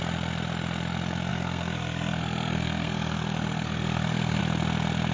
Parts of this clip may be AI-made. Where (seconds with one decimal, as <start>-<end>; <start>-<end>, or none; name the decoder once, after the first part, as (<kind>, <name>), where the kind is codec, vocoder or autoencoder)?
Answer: 1.3-4.4 (codec, SNAC)